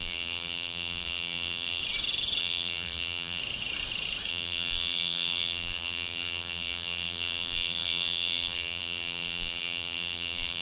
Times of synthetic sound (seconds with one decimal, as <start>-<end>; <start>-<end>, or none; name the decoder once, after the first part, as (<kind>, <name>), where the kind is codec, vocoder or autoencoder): 0.0-1.8 (vocoder, BigVGAN v2); 2.4-3.4; 4.3-10.6